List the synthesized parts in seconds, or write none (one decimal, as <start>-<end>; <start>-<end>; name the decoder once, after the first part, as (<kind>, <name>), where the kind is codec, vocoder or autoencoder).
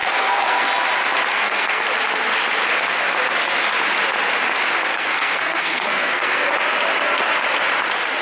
0.0-0.7 (codec, SNAC); 1.3-1.8; 4.9-6.4